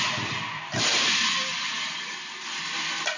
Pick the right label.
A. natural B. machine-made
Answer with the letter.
B